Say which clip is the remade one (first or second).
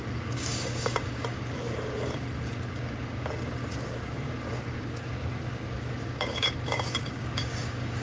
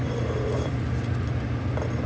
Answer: first